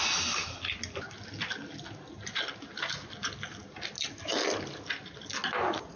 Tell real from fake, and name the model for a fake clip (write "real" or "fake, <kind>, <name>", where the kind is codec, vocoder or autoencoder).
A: real